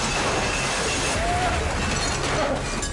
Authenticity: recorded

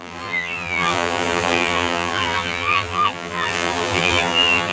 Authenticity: remade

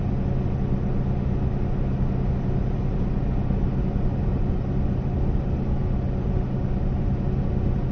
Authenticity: recorded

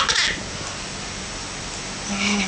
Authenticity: recorded